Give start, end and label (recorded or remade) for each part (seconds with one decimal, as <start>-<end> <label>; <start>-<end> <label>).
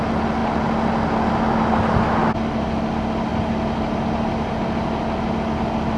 0.0-6.0 recorded